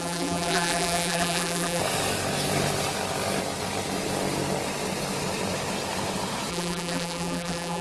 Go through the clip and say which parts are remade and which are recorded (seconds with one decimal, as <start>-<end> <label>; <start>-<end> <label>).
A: 0.0-1.8 remade; 1.8-6.5 recorded; 6.5-7.8 remade